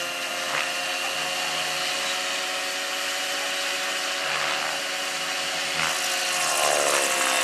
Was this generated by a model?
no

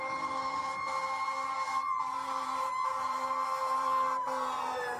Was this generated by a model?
yes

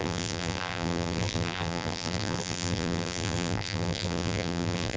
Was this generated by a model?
yes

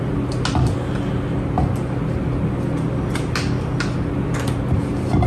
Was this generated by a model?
no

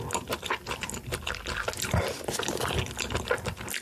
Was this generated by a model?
no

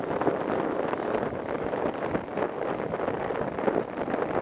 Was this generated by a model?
no